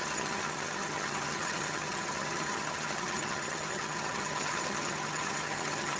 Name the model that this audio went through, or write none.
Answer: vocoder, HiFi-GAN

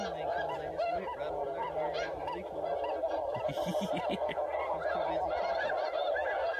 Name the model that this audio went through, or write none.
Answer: none